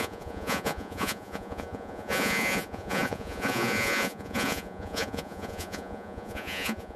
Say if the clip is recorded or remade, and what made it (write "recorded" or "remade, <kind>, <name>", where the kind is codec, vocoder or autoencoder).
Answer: remade, vocoder, Vocos